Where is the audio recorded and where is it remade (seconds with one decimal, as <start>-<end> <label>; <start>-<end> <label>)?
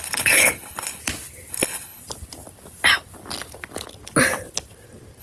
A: 0.0-1.0 remade; 1.0-1.5 recorded; 1.5-2.0 remade; 2.0-5.2 recorded